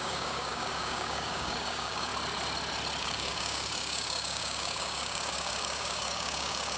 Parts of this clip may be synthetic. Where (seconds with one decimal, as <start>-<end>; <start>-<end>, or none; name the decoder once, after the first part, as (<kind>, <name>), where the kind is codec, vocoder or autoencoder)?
0.0-2.1 (codec, DAC); 3.0-6.8